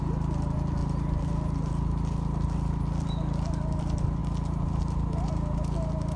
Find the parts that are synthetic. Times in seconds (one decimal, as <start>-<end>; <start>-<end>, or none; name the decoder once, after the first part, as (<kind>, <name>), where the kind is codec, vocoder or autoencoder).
none